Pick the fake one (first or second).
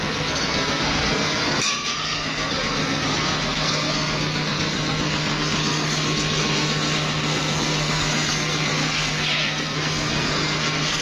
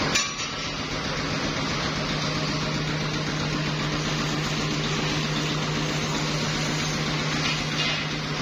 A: first